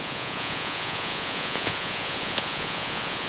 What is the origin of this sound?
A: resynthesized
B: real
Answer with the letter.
A